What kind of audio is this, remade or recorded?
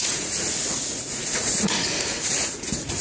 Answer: remade